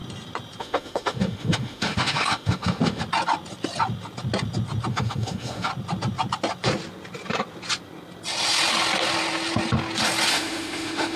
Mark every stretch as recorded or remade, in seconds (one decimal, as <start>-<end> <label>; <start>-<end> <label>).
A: 0.0-0.6 recorded; 0.6-3.0 remade; 3.0-4.9 recorded; 4.9-5.7 remade; 5.7-10.3 recorded; 10.3-11.2 remade